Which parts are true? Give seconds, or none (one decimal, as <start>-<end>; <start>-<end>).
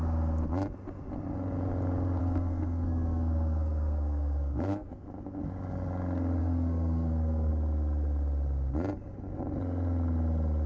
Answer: 0.0-2.2; 4.9-6.4; 7.5-10.7